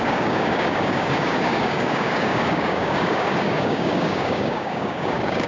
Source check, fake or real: fake